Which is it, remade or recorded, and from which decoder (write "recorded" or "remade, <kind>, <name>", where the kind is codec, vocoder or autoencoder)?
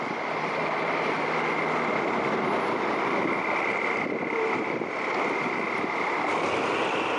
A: recorded